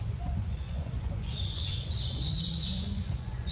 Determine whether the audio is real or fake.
fake